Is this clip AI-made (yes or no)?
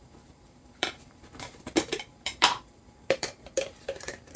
yes